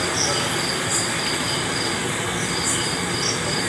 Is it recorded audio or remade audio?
recorded